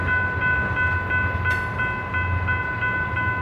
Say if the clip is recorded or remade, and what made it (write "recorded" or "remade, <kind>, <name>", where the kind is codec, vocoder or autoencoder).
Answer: recorded